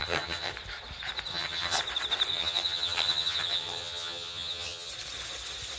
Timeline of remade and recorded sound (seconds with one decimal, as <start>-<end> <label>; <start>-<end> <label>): 0.0-0.5 remade; 0.5-1.3 recorded; 1.3-1.8 remade; 1.8-2.3 recorded; 2.3-4.9 remade; 4.9-5.8 recorded